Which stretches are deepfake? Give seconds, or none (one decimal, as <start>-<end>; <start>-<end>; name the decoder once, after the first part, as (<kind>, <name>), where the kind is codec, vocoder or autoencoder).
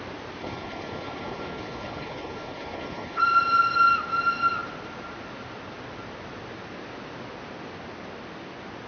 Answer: 0.4-3.2 (codec, HILCodec)